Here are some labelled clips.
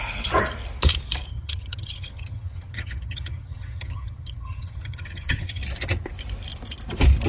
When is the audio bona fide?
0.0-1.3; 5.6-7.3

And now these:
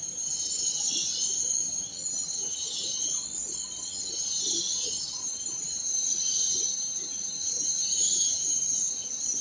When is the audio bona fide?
1.1-1.6; 2.9-3.9

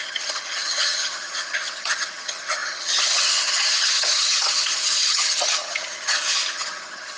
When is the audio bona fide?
none